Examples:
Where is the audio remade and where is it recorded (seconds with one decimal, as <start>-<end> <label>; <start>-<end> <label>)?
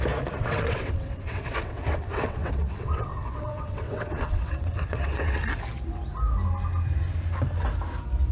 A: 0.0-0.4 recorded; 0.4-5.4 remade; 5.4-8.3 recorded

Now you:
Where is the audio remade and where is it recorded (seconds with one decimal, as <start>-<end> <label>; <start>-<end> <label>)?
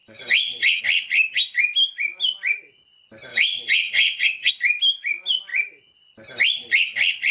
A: 0.0-0.8 remade; 0.8-3.3 recorded; 3.3-4.5 remade; 4.5-7.3 recorded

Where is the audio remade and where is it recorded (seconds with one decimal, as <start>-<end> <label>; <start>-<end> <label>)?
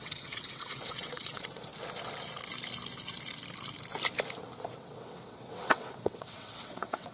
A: 0.0-1.7 remade; 1.7-4.8 recorded; 4.8-7.1 remade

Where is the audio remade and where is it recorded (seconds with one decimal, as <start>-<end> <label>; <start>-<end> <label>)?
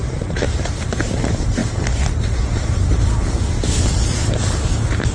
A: 0.0-5.1 recorded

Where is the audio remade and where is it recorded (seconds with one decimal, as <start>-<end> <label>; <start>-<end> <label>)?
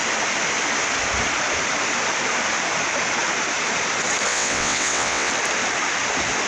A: 0.0-4.3 recorded; 4.3-5.3 remade; 5.3-6.5 recorded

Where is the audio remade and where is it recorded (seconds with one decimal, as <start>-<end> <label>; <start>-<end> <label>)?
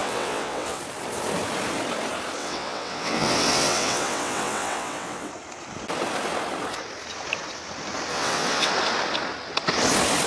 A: 0.0-0.8 remade; 0.8-2.4 recorded; 2.4-5.3 remade; 5.3-8.1 recorded; 8.1-8.7 remade; 8.7-10.3 recorded